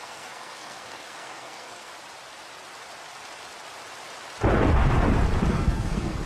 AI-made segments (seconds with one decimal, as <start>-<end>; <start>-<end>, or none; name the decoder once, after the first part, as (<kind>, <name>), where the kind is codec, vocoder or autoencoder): 0.0-1.9 (codec, SNAC); 5.5-6.3